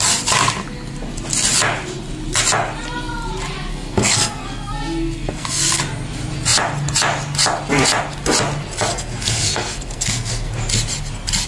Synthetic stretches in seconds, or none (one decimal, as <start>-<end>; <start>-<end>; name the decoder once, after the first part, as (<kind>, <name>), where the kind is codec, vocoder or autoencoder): 3.7-5.8 (codec, SNAC); 8.9-10.5